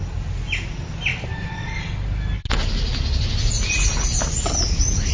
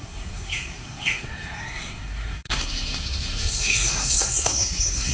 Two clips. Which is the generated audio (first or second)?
second